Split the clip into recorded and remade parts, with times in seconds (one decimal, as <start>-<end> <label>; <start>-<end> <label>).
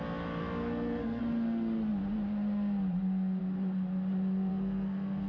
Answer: 0.0-0.4 recorded; 0.4-1.2 remade; 1.2-4.5 recorded; 4.5-5.3 remade